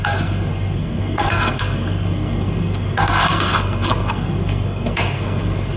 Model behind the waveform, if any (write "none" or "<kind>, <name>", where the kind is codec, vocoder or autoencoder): codec, SNAC